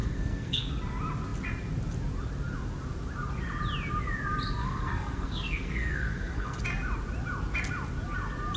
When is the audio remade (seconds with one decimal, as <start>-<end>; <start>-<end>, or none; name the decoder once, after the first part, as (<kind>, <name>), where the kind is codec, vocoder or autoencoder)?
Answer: 0.0-0.7 (codec, SNAC); 4.6-6.6